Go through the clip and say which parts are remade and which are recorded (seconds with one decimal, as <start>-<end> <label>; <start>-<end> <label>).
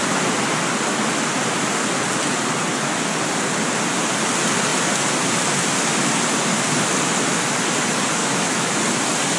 0.0-8.2 recorded; 8.2-8.8 remade; 8.8-9.4 recorded